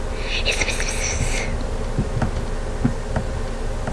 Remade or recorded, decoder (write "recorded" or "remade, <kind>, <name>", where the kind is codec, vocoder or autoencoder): recorded